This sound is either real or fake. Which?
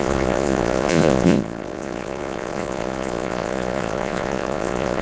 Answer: fake